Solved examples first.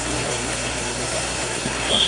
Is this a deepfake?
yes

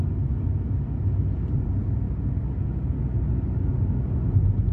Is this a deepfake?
no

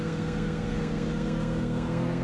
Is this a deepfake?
yes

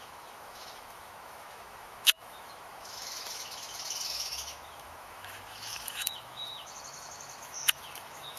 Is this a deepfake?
yes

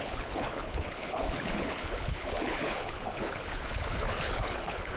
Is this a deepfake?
yes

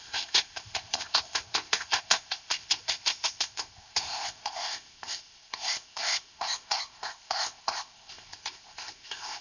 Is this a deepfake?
yes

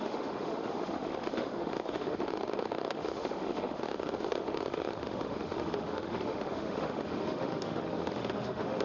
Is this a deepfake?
yes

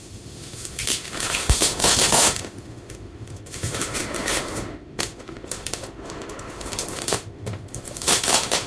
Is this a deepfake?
yes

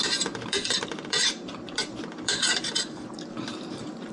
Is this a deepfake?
yes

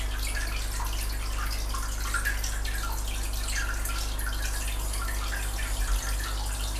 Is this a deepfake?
no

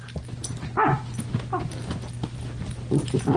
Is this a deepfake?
no